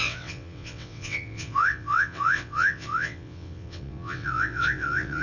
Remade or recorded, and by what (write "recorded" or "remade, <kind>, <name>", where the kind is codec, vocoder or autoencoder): remade, vocoder, WaveNeXt